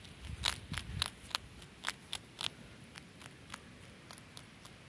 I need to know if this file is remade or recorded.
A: recorded